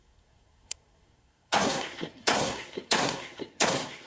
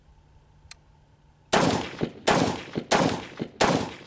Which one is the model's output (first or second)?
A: first